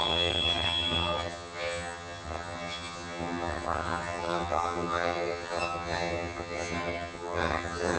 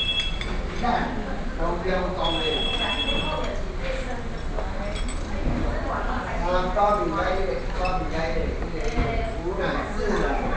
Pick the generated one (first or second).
first